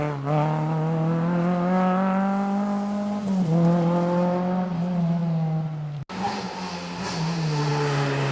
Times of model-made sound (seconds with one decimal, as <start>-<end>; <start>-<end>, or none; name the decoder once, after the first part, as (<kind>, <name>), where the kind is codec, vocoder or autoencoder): none